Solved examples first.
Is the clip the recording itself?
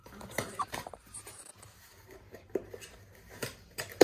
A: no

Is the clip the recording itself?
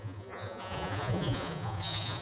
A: no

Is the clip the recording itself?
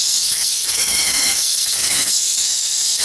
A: no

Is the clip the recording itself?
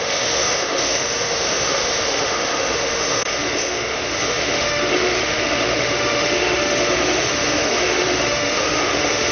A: no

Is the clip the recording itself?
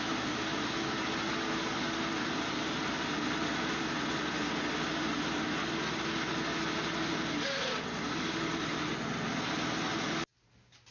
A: yes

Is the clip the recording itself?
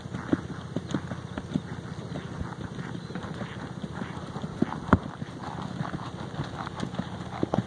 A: yes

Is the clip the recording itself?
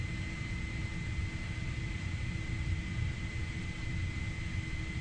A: yes